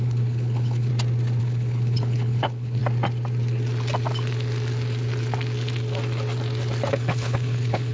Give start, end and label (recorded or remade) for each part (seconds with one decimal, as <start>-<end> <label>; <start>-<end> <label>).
0.0-0.9 remade; 0.9-1.4 recorded; 1.4-2.8 remade; 2.8-6.9 recorded; 6.9-7.9 remade